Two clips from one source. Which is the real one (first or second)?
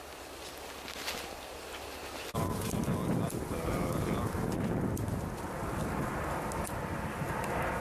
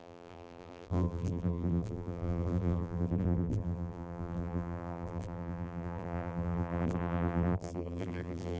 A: first